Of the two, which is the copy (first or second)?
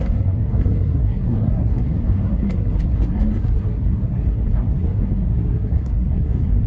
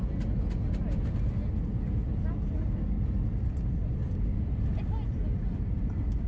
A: first